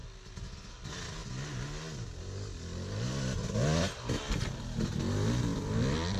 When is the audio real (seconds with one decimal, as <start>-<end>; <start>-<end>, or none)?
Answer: 0.0-6.2